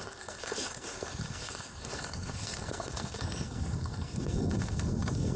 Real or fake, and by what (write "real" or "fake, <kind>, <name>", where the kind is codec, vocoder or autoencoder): fake, codec, SNAC